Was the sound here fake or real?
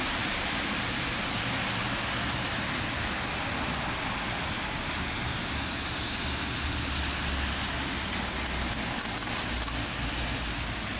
real